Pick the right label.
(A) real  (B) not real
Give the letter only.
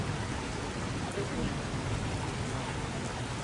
A